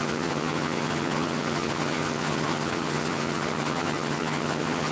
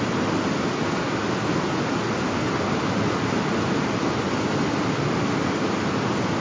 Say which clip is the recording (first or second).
second